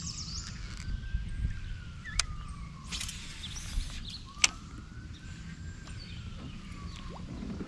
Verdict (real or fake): real